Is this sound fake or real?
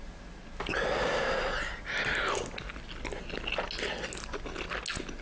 real